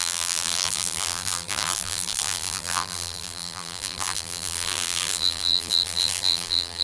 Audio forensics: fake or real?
fake